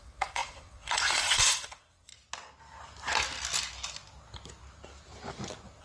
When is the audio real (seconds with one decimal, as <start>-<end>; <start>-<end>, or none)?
2.1-5.8